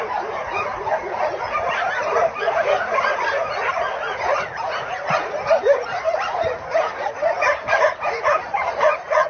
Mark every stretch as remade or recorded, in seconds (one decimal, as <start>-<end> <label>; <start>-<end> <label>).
0.0-9.3 remade